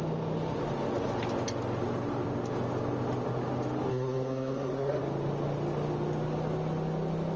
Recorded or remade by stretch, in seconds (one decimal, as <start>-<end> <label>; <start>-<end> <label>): 0.0-3.9 recorded; 3.9-5.0 remade; 5.0-7.4 recorded